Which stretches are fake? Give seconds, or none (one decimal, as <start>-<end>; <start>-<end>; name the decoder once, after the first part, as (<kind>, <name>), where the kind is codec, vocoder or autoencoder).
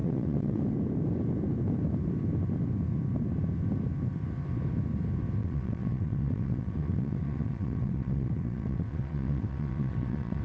0.0-0.6 (vocoder, WaveNeXt); 5.4-10.4